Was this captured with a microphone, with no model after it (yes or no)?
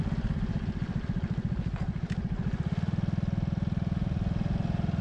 yes